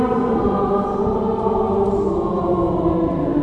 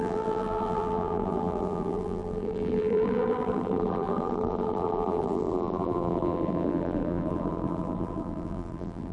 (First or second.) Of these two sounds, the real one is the first